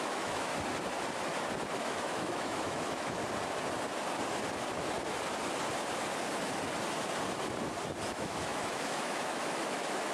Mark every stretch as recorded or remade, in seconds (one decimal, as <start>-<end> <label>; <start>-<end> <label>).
0.0-0.5 remade; 0.5-1.7 recorded; 1.7-3.2 remade; 3.2-8.0 recorded; 8.0-10.1 remade